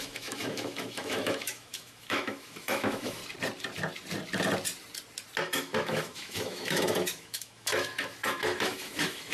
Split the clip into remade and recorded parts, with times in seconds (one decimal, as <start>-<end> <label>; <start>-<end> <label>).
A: 0.0-3.2 remade; 3.2-5.4 recorded; 5.4-9.3 remade